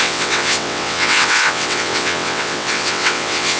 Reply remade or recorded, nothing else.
remade